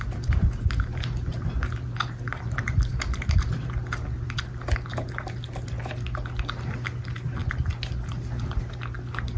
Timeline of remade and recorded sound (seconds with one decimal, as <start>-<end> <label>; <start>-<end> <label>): 0.0-9.4 recorded